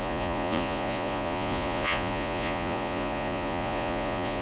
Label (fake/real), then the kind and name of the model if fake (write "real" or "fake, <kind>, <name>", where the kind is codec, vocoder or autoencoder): fake, vocoder, Vocos